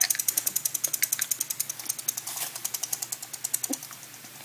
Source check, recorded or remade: recorded